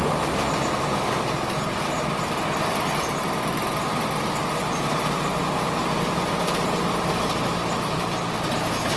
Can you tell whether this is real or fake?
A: real